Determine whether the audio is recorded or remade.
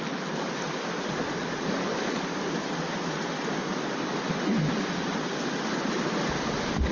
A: recorded